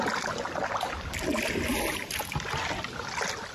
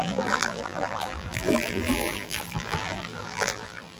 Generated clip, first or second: second